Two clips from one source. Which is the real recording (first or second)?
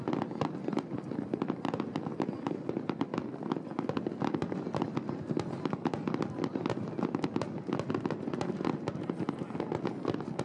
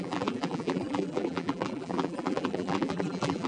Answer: first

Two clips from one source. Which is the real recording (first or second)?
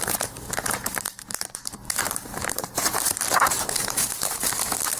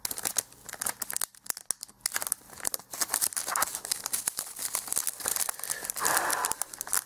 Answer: second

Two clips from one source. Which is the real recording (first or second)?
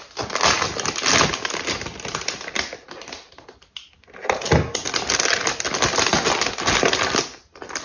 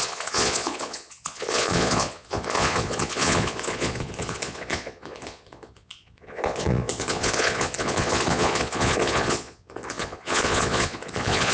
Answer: first